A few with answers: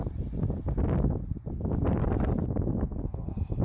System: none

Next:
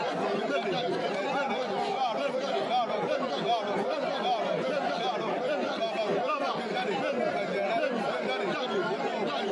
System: none